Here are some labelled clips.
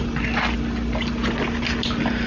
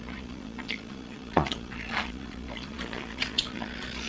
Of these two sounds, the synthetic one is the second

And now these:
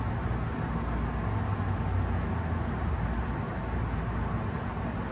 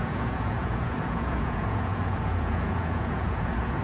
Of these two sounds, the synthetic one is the second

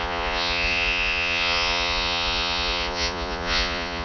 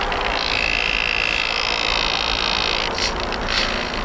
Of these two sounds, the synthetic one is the first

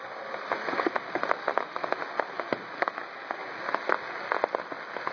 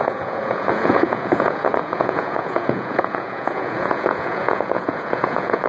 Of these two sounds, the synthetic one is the second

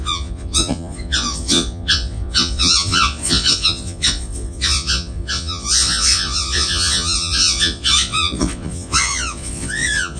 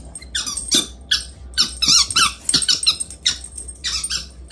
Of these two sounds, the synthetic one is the first